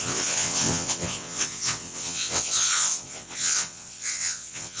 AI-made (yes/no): yes